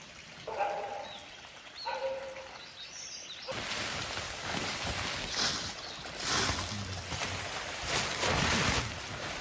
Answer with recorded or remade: recorded